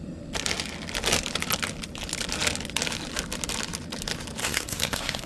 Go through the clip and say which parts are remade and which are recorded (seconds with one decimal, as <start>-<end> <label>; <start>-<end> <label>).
0.0-4.4 recorded; 4.4-5.3 remade